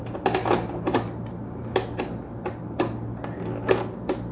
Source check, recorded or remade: recorded